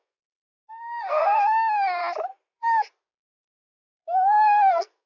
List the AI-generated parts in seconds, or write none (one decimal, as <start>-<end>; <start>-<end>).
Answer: 0.0-2.0; 3.8-5.1